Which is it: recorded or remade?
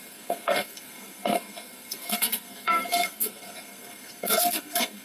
remade